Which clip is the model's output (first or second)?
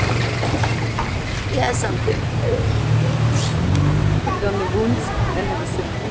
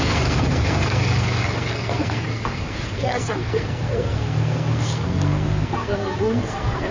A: second